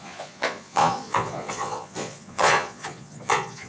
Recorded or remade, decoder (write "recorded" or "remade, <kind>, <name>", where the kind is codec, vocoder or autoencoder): remade, vocoder, Vocos